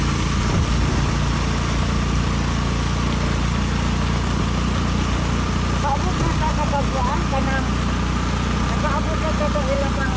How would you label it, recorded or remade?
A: recorded